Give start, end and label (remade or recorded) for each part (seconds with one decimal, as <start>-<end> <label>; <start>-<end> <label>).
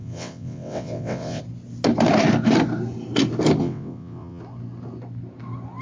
0.0-1.4 remade; 1.4-3.6 recorded; 3.6-4.4 remade; 4.4-5.8 recorded